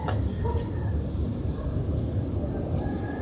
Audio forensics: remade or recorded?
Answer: recorded